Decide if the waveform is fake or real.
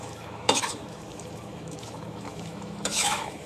fake